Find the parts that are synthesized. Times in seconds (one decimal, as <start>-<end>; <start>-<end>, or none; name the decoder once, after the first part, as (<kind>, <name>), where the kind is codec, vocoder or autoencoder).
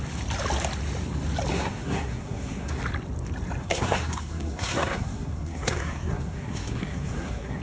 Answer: 1.5-2.8 (codec, SNAC); 3.6-7.6